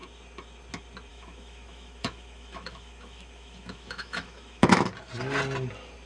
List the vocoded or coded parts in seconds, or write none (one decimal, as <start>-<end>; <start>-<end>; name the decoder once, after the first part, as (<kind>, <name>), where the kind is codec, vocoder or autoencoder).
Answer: 1.1-4.8 (autoencoder, DAC-VAE)